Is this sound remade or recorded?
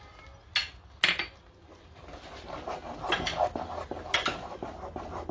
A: recorded